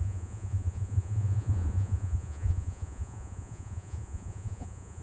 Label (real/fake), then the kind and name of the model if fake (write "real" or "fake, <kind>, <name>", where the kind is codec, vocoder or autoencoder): fake, vocoder, Vocos